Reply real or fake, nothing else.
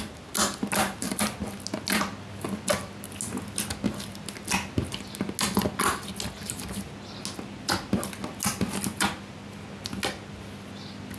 real